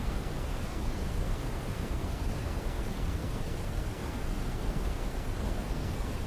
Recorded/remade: remade